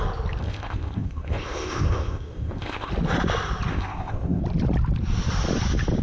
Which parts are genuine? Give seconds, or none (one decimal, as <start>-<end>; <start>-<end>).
0.0-0.4; 2.9-3.7; 4.4-6.0